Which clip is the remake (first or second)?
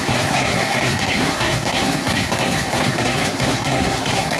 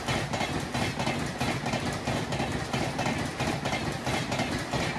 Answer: first